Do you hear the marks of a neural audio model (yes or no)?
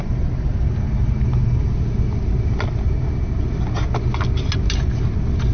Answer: no